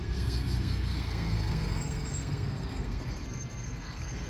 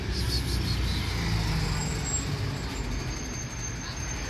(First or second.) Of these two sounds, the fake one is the first